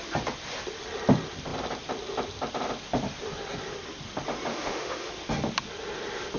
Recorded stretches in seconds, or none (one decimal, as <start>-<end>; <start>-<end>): 0.0-4.5; 5.1-6.4